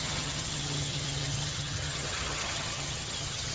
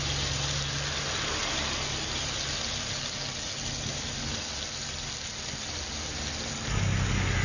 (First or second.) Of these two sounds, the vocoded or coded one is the first